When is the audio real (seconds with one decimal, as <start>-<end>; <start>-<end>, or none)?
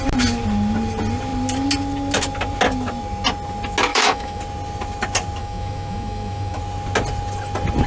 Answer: 0.0-3.9; 4.4-5.4; 6.6-7.9